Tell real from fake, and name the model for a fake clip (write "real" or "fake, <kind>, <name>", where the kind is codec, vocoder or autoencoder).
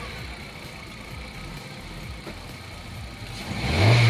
real